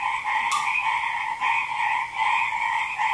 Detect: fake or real real